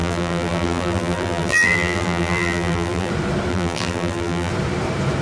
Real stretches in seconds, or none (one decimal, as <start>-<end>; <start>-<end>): 3.1-3.5; 4.5-5.2